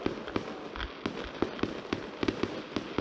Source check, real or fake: real